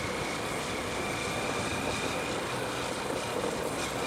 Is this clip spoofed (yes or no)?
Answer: no